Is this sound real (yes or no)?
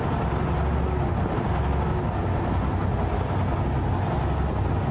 yes